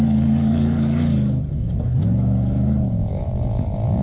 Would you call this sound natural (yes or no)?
no